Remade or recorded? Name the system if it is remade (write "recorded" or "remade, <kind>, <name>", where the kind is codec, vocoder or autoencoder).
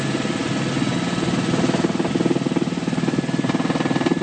recorded